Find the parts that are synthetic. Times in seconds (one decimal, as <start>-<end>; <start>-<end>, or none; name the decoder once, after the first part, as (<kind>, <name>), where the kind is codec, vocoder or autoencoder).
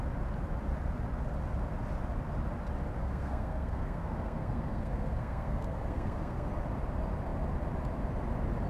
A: 3.0-6.5 (codec, SNAC)